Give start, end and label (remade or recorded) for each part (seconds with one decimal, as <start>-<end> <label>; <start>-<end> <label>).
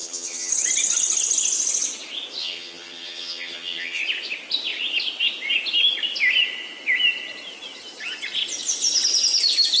0.0-0.5 remade; 0.5-2.4 recorded; 2.4-4.0 remade; 4.0-9.8 recorded